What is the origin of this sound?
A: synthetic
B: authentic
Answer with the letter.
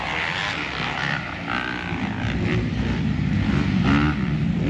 B